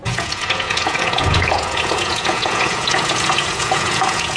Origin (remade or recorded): remade